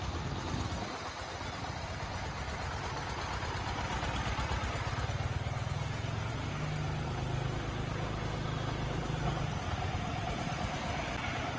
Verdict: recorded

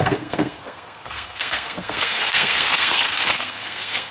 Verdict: remade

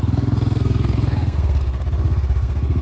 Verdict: remade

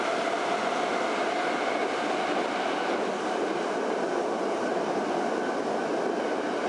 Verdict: recorded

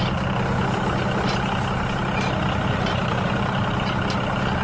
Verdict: recorded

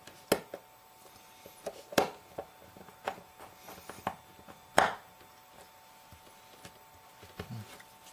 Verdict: recorded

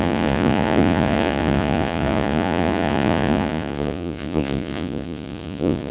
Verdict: remade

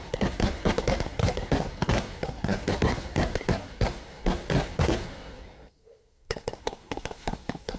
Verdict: remade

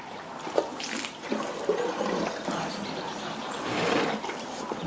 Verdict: remade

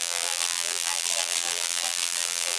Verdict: remade